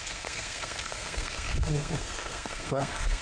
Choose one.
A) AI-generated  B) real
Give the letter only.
A